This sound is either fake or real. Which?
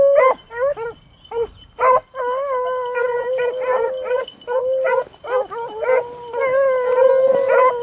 real